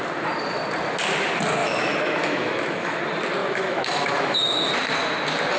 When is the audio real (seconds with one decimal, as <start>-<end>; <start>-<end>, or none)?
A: 0.0-1.6; 3.0-3.4; 4.7-5.6